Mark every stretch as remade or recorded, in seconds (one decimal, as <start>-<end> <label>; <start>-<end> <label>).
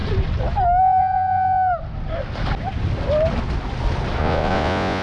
0.0-0.8 recorded; 0.8-1.7 remade; 1.7-4.2 recorded; 4.2-5.0 remade